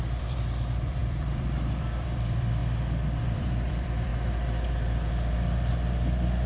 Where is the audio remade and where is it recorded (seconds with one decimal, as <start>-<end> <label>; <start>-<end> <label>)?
0.0-2.6 remade; 2.6-3.2 recorded; 3.2-4.1 remade; 4.1-6.5 recorded

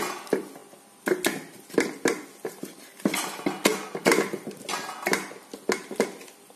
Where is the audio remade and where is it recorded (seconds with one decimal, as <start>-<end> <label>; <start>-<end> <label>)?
0.0-6.6 recorded

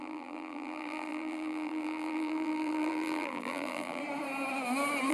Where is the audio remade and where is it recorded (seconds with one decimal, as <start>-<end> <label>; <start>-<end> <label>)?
0.0-4.0 remade; 4.0-5.1 recorded